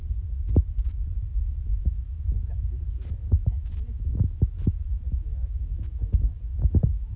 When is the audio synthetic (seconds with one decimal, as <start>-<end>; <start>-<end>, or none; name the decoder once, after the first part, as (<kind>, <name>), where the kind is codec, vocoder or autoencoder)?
1.3-2.8 (autoencoder, DAC-VAE); 3.4-6.1; 6.5-7.2